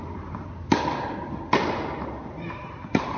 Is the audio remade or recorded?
recorded